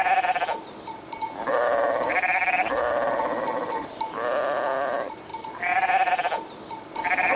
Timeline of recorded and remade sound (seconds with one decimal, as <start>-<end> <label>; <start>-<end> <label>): 0.0-7.4 recorded